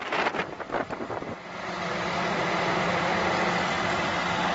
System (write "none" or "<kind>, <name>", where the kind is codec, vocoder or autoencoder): none